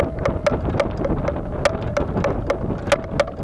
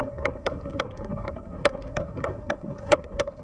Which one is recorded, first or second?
first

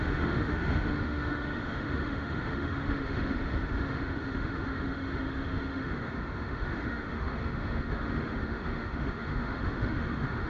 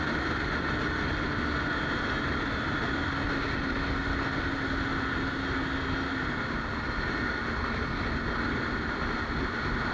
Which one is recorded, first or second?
second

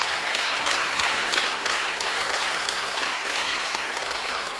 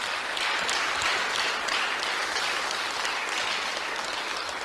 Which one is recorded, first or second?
second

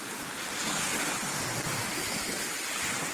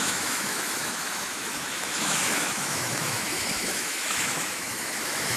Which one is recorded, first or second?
first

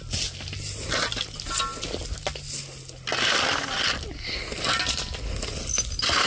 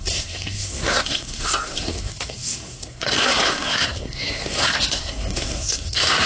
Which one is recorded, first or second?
first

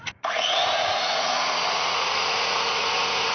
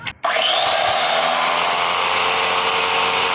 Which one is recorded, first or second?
second